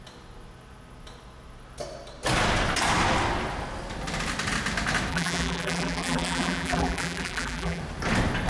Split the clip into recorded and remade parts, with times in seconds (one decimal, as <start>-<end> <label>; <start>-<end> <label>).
0.0-5.1 recorded; 5.1-7.8 remade; 7.8-8.5 recorded